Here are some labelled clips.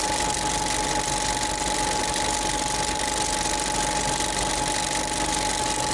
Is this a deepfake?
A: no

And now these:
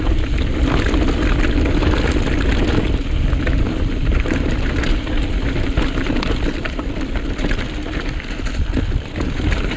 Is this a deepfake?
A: no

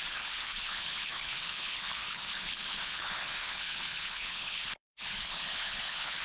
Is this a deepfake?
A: yes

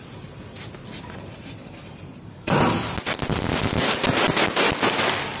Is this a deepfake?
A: no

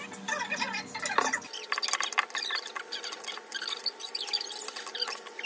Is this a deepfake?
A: no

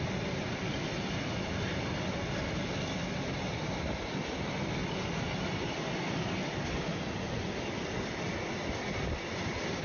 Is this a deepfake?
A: no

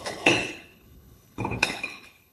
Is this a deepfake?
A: yes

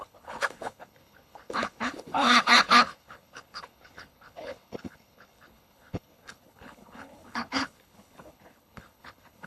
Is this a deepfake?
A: yes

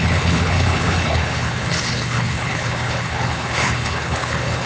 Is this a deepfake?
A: yes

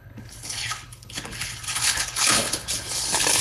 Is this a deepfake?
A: yes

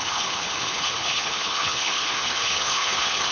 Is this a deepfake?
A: yes